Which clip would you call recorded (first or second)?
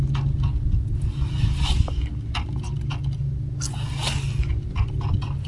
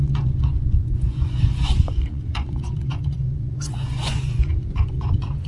first